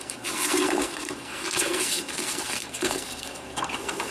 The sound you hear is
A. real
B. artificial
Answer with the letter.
B